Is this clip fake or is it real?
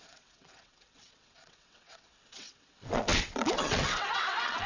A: fake